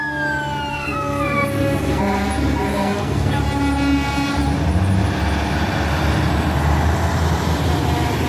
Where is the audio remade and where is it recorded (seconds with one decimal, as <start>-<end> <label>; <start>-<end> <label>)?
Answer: 0.0-0.7 recorded; 0.7-2.0 remade; 2.0-2.7 recorded; 2.7-3.4 remade; 3.4-8.3 recorded